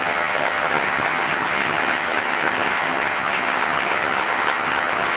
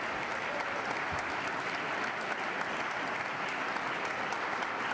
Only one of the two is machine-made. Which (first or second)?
first